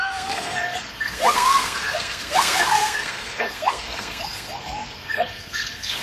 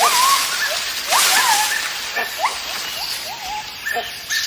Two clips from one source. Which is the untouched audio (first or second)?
second